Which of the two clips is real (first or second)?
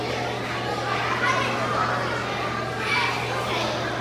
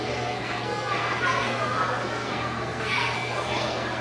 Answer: first